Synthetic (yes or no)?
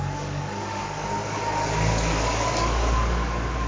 yes